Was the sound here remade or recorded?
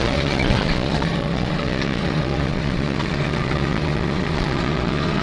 remade